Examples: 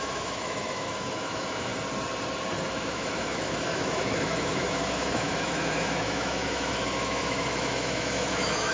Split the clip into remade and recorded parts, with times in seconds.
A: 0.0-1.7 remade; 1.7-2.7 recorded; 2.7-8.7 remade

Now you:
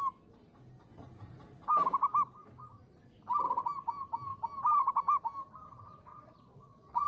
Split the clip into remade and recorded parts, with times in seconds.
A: 0.0-6.1 recorded; 6.1-7.1 remade

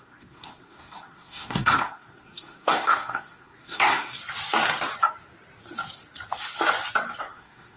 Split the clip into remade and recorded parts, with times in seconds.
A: 0.0-4.2 remade; 4.2-7.2 recorded; 7.2-7.8 remade